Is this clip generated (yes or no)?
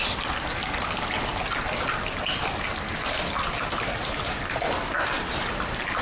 no